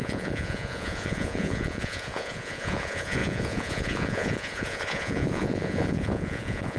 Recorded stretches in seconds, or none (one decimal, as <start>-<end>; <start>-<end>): none